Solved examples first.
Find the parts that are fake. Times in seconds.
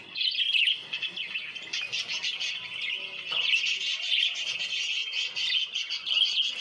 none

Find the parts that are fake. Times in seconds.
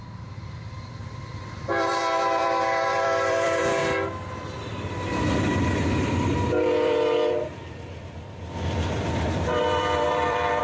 0.0-3.8 (vocoder, BigVGAN v2); 4.6-10.6